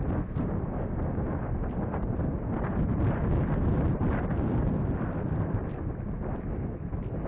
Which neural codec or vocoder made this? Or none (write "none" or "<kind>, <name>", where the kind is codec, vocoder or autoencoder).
vocoder, BigVGAN v2